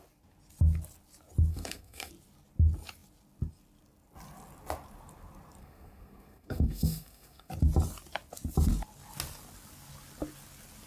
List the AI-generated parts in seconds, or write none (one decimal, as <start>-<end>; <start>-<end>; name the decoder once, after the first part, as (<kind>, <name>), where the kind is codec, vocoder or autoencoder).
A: 1.5-2.1 (codec, SNAC); 5.6-7.5